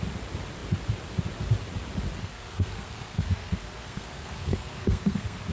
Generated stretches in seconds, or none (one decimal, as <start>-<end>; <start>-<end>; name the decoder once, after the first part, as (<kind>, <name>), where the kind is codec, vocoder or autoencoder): 2.2-5.5 (codec, SNAC)